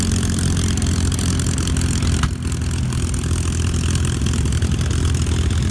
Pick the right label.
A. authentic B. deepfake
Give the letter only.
A